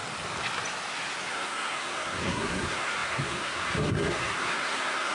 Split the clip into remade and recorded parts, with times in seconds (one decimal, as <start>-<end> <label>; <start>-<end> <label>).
0.0-1.3 recorded; 1.3-5.1 remade

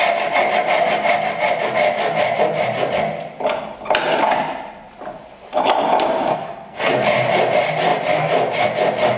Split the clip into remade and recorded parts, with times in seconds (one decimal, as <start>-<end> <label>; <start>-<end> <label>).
0.0-6.3 recorded; 6.3-6.9 remade; 6.9-9.2 recorded

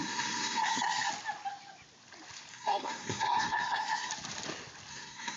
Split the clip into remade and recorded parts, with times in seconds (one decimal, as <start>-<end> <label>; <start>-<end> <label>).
0.0-1.1 remade; 1.1-2.5 recorded; 2.5-4.1 remade; 4.1-4.9 recorded; 4.9-5.4 remade

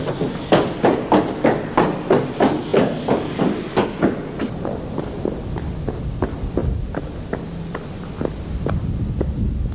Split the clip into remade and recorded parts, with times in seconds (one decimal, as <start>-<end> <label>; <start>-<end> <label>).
0.0-9.7 recorded

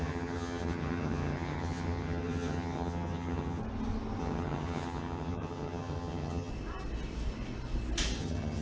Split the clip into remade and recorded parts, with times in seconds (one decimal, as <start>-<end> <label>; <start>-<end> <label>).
0.0-3.6 remade; 3.6-4.2 recorded; 4.2-6.5 remade; 6.5-8.2 recorded; 8.2-8.6 remade

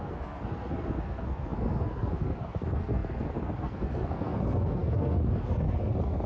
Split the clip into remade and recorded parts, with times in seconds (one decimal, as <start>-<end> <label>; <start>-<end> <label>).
0.0-6.3 remade

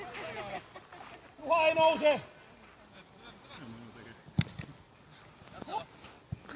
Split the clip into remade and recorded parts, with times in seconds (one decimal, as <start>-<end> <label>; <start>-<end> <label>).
0.0-6.6 recorded